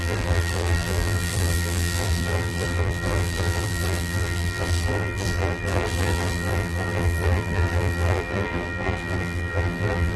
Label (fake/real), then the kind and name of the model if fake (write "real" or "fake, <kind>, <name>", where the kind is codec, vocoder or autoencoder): fake, vocoder, BigVGAN v2